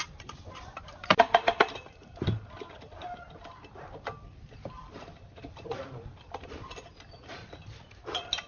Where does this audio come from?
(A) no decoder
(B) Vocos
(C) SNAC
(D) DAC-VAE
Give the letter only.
A